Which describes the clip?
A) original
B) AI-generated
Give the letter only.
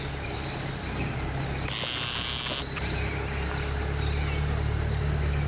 A